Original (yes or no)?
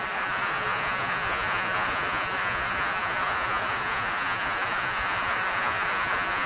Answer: no